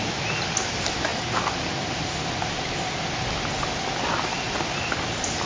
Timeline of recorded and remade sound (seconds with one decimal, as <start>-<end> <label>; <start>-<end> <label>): 0.0-5.5 recorded